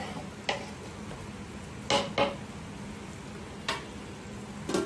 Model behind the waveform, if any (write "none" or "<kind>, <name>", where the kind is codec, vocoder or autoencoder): none